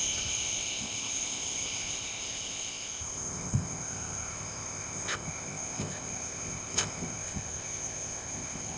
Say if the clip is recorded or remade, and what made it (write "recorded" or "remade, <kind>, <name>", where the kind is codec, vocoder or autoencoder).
remade, codec, ZipCodec